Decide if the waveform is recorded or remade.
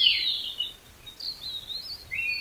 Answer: recorded